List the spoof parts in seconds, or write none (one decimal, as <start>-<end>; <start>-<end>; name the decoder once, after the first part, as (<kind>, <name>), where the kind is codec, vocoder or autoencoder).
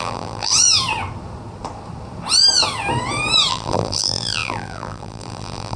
0.0-0.5 (vocoder, BigVGAN v2); 3.5-5.8